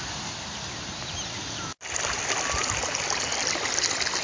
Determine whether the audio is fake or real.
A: real